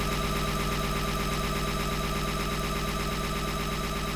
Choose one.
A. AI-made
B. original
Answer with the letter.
B